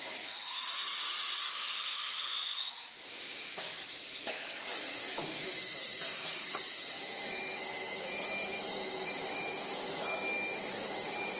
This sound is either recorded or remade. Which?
remade